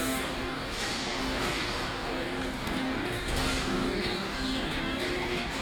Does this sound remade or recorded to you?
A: remade